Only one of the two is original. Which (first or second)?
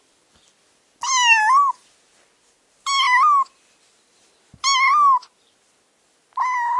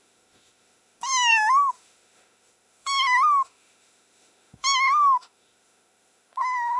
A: first